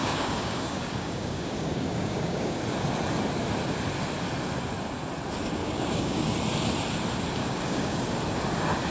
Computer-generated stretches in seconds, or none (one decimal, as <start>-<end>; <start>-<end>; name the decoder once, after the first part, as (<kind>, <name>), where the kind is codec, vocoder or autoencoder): 0.0-2.6 (codec, DAC); 5.6-6.3; 7.4-8.0